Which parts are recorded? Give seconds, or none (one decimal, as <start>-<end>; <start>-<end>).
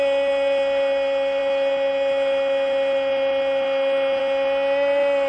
0.0-5.3